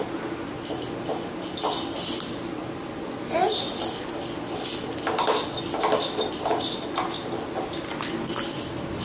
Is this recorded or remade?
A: recorded